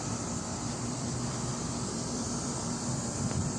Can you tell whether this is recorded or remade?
remade